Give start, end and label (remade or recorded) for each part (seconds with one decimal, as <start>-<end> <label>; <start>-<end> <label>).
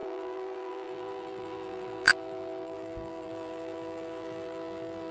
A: 0.0-5.1 remade